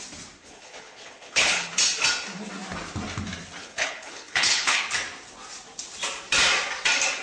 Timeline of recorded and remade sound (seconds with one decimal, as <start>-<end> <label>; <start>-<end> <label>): 0.0-0.4 recorded; 0.4-1.7 remade; 1.7-3.6 recorded; 3.6-4.8 remade; 4.8-7.2 recorded